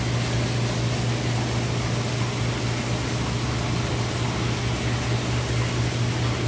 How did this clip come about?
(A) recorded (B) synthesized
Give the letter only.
A